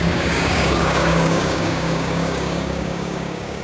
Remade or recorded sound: remade